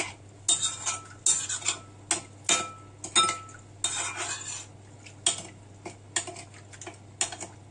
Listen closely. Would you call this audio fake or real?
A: real